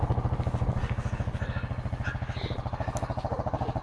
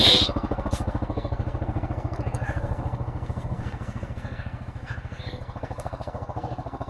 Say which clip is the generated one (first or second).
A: second